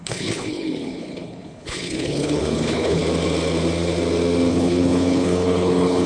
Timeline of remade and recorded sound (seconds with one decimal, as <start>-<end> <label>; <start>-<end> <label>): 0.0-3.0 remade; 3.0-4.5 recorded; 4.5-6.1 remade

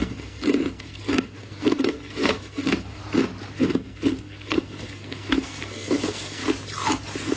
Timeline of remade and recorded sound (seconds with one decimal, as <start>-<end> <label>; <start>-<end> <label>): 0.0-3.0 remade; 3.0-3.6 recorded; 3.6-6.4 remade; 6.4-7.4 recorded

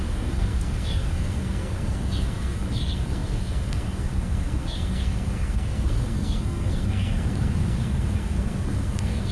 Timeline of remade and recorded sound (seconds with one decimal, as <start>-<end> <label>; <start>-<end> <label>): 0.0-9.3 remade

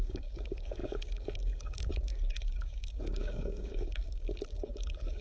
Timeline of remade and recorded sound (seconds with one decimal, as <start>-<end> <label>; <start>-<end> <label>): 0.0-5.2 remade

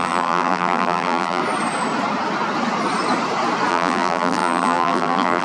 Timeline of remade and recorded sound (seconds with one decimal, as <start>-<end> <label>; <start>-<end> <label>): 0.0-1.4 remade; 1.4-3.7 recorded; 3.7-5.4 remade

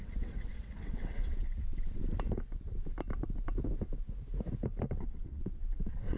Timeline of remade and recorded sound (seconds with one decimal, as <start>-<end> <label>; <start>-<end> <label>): 0.0-2.0 remade; 2.0-5.0 recorded; 5.0-6.2 remade

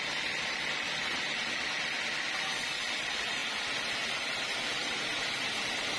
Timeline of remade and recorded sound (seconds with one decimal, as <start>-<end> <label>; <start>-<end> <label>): 0.0-6.0 recorded